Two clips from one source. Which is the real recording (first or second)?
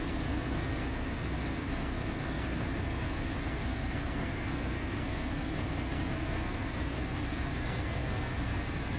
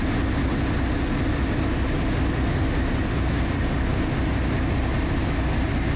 second